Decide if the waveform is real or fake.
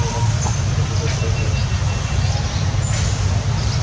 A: real